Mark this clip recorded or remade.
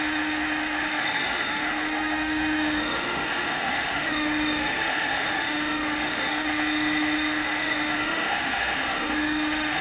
remade